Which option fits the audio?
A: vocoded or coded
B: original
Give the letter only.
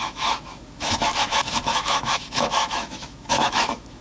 A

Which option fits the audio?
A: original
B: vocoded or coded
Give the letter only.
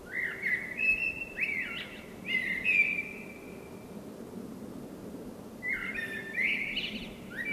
A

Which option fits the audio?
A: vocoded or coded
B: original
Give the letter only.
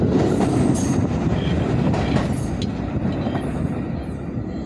B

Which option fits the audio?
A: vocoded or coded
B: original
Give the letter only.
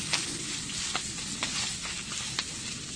B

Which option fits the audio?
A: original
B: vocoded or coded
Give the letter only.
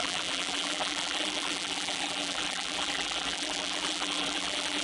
B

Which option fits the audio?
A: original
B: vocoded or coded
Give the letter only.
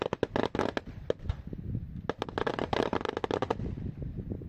A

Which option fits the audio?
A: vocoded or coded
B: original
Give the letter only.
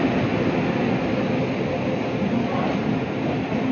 B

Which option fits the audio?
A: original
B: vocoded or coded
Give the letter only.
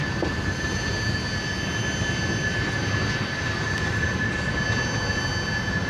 A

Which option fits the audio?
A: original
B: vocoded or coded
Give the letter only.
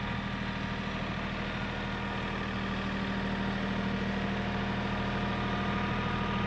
A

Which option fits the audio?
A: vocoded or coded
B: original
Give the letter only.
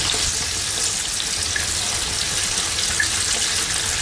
B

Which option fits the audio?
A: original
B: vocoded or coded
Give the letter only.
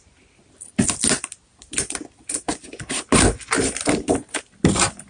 A